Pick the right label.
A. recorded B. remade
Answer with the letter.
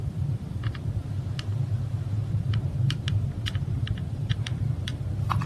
B